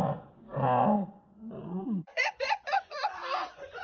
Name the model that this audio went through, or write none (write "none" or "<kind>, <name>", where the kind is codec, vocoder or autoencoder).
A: vocoder, Vocos